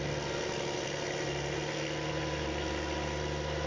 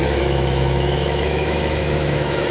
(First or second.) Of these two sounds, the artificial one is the second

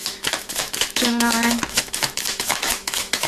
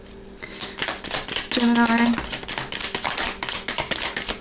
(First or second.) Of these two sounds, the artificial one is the first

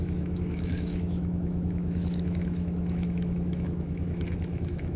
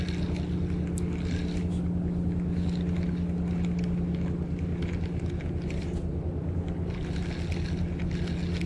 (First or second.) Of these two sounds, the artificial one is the first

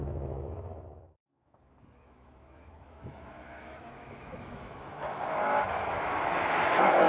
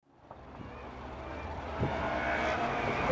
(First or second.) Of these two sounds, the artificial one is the first